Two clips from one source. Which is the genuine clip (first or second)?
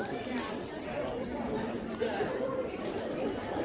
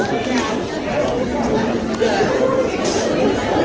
second